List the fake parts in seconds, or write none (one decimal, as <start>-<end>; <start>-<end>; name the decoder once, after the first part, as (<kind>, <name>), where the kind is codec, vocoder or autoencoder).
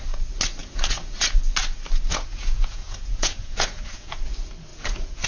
0.6-1.4 (vocoder, Vocos); 2.1-4.3; 4.7-5.3